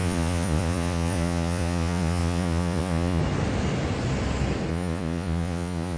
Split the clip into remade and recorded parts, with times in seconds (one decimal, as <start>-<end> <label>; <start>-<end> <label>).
0.0-3.2 remade; 3.2-4.7 recorded; 4.7-6.0 remade